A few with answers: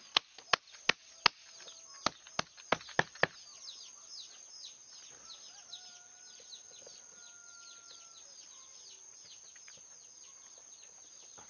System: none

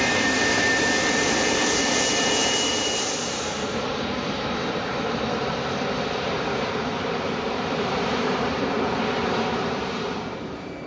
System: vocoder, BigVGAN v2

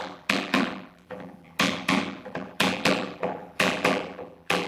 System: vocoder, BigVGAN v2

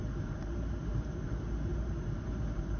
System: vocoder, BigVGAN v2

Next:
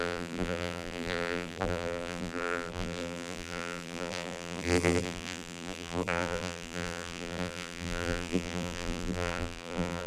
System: vocoder, BigVGAN v2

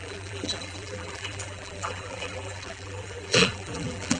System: vocoder, BigVGAN v2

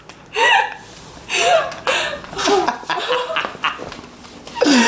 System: none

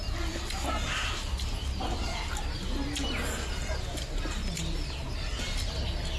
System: none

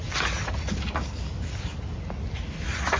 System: none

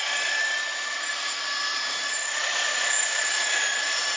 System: vocoder, BigVGAN v2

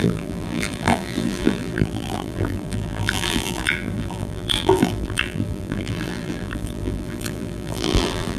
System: vocoder, BigVGAN v2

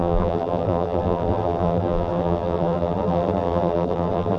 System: vocoder, BigVGAN v2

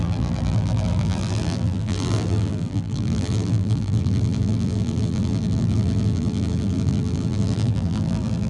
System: vocoder, BigVGAN v2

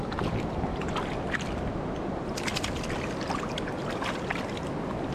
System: none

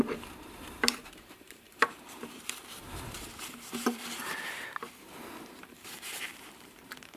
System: vocoder, BigVGAN v2